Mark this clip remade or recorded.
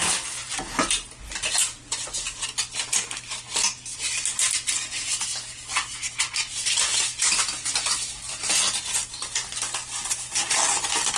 recorded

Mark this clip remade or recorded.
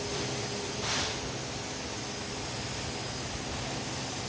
recorded